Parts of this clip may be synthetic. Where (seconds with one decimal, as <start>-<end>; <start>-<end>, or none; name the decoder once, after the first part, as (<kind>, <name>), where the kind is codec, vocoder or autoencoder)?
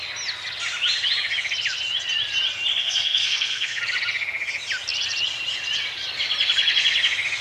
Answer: 2.8-3.8 (codec, SNAC)